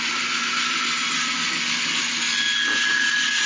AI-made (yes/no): no